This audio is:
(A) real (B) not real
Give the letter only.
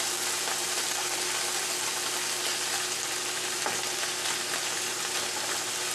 A